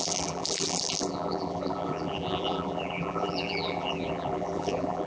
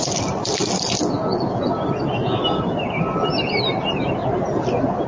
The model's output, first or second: first